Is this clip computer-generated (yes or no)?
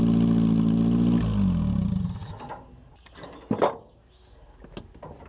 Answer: no